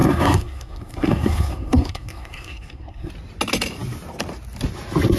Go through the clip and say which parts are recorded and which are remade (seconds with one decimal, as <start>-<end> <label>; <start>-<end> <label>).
0.0-3.1 remade; 3.1-5.2 recorded